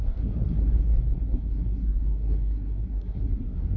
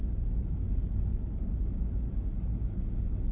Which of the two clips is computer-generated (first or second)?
first